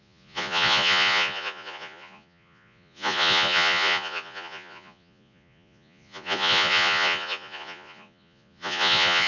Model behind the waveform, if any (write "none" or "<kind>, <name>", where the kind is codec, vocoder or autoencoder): vocoder, Vocos